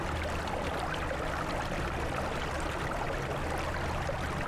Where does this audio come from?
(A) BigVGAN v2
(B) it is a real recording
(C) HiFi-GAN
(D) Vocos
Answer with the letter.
B